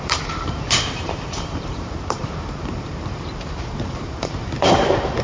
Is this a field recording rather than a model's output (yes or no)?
no